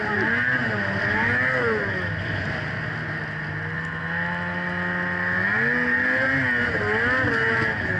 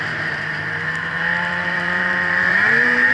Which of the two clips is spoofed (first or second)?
second